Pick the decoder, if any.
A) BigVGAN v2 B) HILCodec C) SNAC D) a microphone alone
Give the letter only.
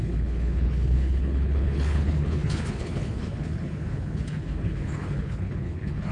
B